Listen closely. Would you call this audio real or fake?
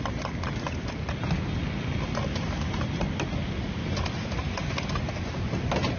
real